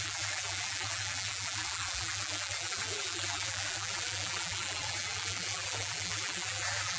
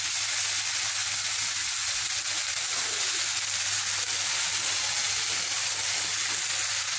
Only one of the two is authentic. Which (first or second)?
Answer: second